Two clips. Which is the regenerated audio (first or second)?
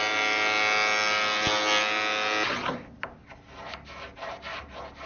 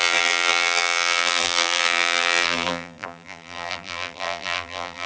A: second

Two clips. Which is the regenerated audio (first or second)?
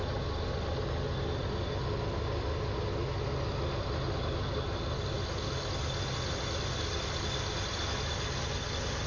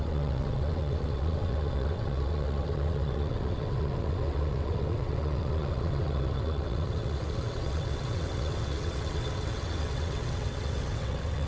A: second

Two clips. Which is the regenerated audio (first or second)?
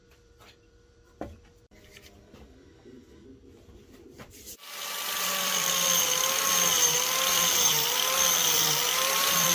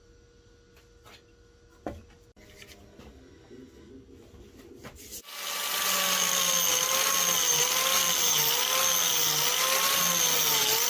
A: first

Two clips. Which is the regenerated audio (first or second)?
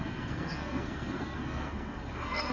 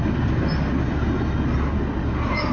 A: first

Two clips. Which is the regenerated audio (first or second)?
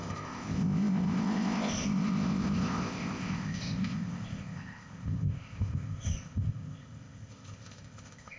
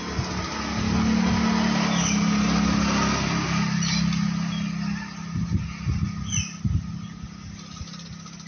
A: first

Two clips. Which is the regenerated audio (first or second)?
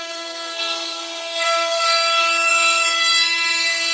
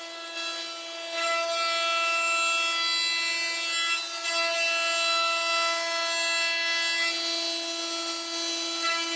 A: first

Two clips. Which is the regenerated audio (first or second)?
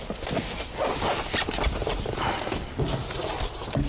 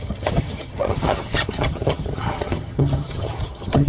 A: second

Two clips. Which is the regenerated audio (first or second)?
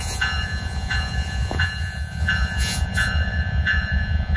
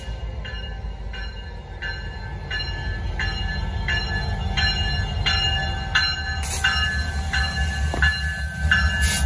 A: first